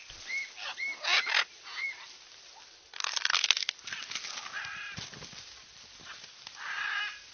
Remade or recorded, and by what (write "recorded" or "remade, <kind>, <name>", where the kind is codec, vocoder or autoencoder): recorded